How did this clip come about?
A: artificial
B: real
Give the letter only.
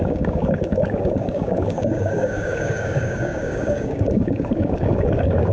A